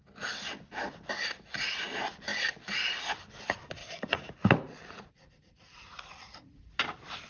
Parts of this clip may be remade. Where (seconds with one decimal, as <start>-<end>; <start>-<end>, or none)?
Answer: 3.8-6.8